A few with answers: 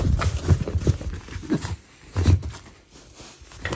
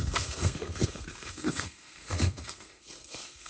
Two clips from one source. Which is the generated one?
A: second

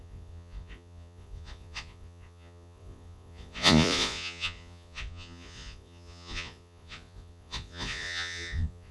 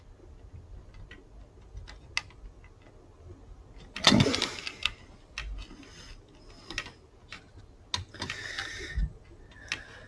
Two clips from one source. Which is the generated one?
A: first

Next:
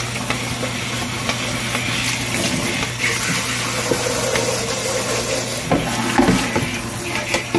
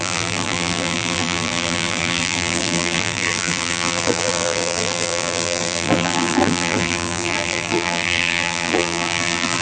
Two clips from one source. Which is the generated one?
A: second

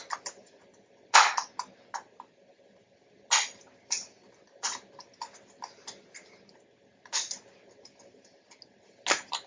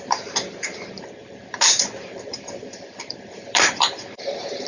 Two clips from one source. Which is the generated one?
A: second